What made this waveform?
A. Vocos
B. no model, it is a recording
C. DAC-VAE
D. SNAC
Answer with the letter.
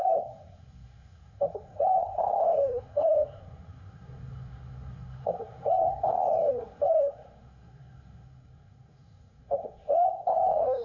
D